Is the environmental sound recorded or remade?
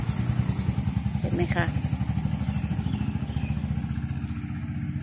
recorded